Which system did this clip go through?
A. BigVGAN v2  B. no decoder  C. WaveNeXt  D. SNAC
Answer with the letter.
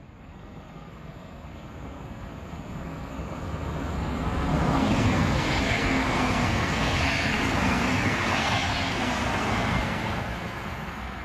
D